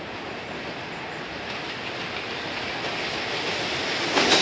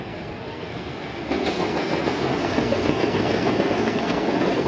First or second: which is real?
first